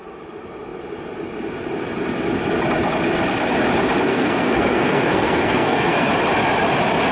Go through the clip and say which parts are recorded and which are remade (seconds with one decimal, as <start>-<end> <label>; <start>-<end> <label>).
0.0-4.1 recorded; 4.1-6.1 remade; 6.1-7.1 recorded

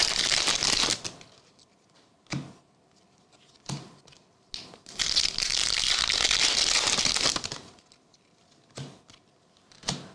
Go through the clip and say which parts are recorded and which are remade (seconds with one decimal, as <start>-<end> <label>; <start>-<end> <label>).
0.0-10.1 recorded

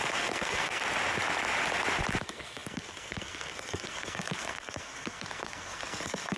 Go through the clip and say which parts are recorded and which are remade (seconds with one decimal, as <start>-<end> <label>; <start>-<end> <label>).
0.0-0.8 remade; 0.8-2.2 recorded; 2.2-6.4 remade

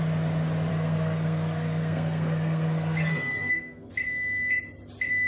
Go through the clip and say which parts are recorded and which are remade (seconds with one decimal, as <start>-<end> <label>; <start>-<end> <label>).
0.0-0.7 recorded; 0.7-3.9 remade; 3.9-5.3 recorded

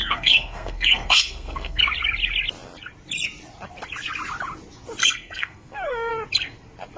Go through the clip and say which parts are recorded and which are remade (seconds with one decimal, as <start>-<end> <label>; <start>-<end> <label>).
0.0-1.8 remade; 1.8-5.0 recorded; 5.0-6.1 remade; 6.1-7.0 recorded

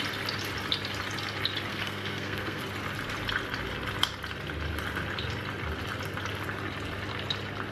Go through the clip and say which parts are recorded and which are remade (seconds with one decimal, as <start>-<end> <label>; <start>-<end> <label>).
0.0-1.7 recorded; 1.7-2.6 remade; 2.6-7.7 recorded

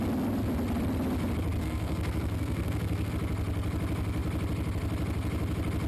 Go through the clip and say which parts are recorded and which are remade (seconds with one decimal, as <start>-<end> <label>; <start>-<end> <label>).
0.0-1.6 recorded; 1.6-3.1 remade; 3.1-5.9 recorded